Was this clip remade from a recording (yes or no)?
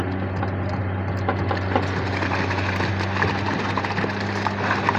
no